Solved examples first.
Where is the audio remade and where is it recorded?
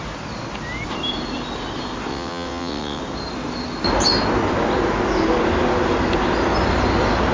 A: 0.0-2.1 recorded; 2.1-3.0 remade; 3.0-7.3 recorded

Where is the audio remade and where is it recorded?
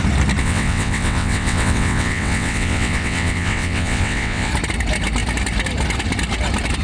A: 0.0-0.4 recorded; 0.4-4.5 remade; 4.5-6.8 recorded